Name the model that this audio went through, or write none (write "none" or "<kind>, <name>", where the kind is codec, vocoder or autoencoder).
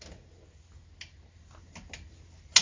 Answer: none